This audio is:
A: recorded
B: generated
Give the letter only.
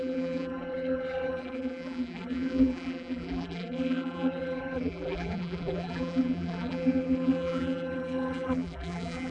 B